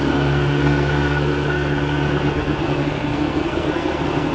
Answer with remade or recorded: remade